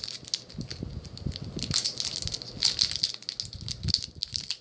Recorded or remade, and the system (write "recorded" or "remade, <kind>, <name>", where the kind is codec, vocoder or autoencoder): recorded